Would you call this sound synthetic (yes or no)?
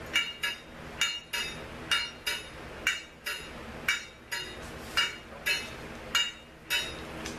no